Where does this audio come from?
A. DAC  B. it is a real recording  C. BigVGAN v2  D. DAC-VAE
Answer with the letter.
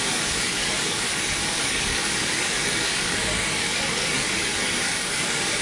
A